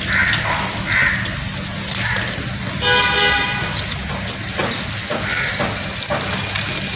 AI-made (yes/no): no